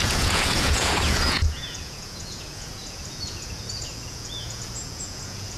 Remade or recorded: remade